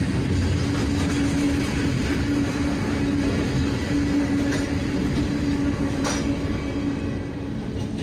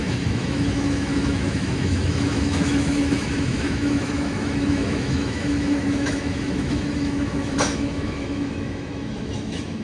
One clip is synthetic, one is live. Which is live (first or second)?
first